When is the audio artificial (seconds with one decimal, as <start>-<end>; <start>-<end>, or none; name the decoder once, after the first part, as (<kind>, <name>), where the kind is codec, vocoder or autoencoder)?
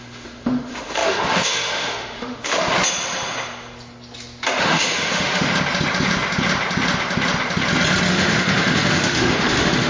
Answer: 0.0-2.6 (autoencoder, DAC-VAE); 4.6-5.5; 8.1-9.9